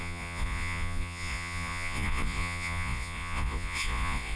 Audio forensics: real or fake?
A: fake